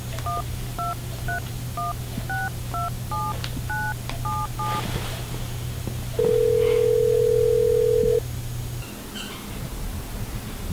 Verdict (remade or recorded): recorded